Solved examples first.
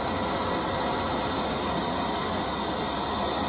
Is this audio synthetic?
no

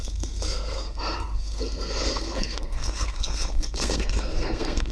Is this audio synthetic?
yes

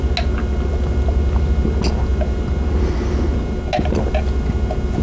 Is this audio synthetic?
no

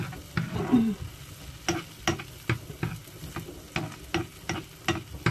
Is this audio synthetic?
no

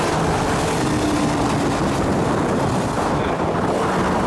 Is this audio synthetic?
no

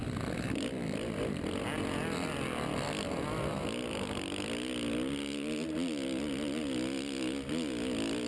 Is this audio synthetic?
no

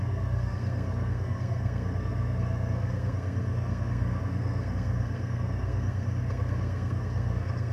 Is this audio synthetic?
yes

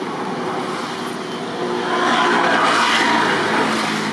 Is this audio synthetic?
no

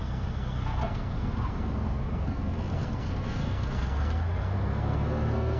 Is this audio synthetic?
yes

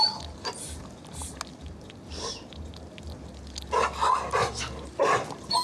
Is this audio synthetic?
no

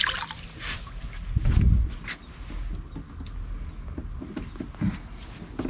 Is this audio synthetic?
no